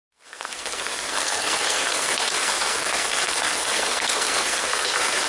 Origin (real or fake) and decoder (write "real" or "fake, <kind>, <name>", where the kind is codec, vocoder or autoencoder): fake, codec, SNAC